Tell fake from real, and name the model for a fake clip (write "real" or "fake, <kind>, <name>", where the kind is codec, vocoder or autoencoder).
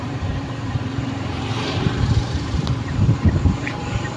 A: fake, vocoder, BigVGAN v2